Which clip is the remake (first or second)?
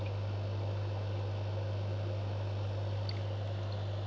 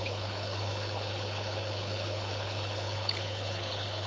second